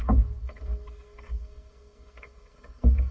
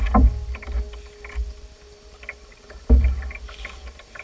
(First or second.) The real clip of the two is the second